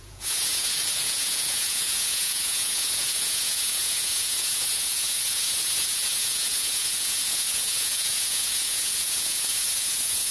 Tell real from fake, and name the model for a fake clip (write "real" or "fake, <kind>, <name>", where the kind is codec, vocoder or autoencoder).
fake, vocoder, Vocos